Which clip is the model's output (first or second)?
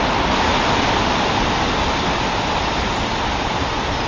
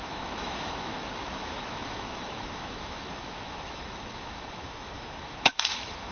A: second